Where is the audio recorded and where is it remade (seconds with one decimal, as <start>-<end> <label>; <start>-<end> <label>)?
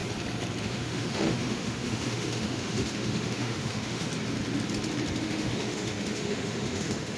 0.0-0.6 recorded; 0.6-4.1 remade; 4.1-5.2 recorded; 5.2-7.2 remade